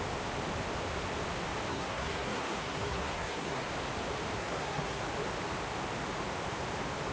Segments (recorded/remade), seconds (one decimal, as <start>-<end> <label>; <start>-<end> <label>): 0.0-1.7 recorded; 1.7-3.7 remade; 3.7-4.4 recorded; 4.4-5.0 remade; 5.0-7.1 recorded